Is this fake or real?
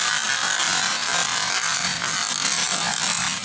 real